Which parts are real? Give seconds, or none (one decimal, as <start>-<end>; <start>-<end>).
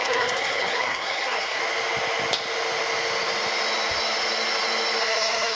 1.6-5.0